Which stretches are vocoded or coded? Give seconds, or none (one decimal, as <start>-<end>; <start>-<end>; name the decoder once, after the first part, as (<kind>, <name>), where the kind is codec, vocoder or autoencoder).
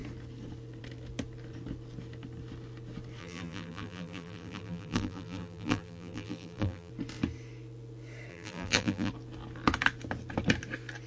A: 3.2-6.9 (vocoder, BigVGAN v2); 8.3-9.1